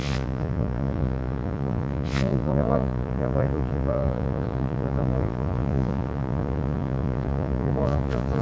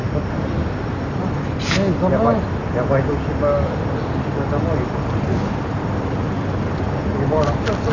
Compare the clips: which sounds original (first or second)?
second